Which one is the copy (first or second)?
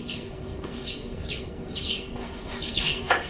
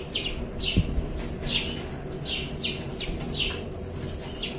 first